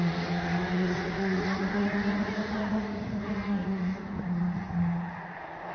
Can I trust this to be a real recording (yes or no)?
no